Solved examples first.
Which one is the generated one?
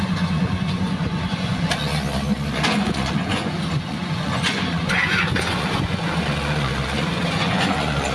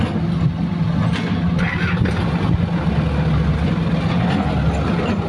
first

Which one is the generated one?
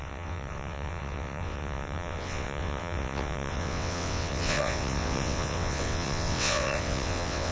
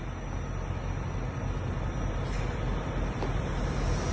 first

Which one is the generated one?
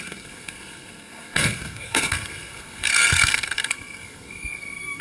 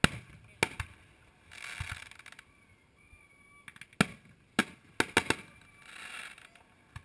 first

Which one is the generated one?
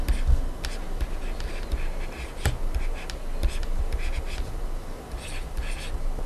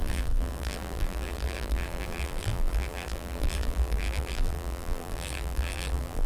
second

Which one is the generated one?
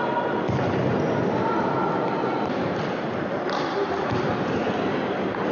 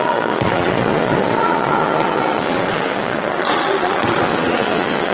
second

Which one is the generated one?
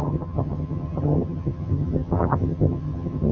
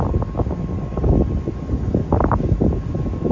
first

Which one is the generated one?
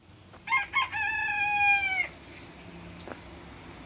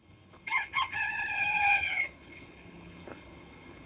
second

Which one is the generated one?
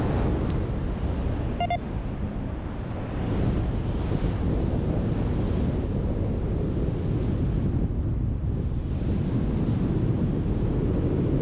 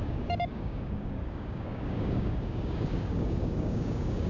second